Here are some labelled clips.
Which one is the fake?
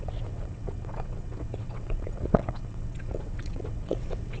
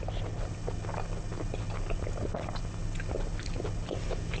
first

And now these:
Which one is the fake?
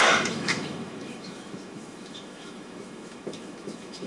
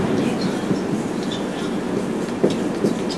first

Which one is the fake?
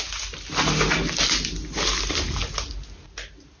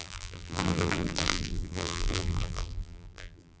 second